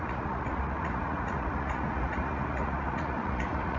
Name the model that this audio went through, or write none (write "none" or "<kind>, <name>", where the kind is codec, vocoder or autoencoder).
vocoder, Vocos